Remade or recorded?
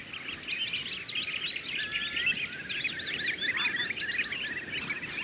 recorded